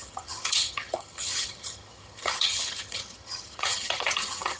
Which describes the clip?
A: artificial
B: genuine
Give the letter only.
A